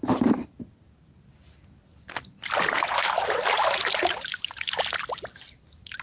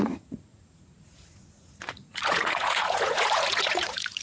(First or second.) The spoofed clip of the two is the second